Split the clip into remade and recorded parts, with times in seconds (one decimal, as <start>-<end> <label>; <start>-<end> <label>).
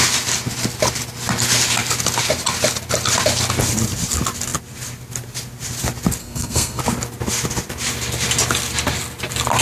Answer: 0.0-6.2 recorded; 6.2-6.8 remade; 6.8-9.6 recorded